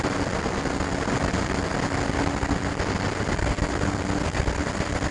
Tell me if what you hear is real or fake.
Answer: real